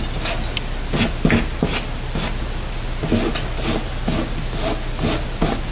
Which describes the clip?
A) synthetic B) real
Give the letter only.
B